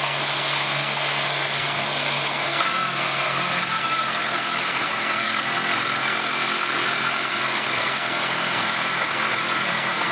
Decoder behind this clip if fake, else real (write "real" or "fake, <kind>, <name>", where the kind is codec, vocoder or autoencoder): fake, codec, SNAC